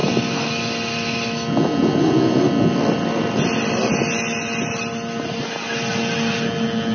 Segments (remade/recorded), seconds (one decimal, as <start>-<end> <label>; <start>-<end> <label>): 0.0-6.9 recorded